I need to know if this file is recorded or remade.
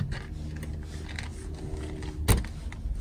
recorded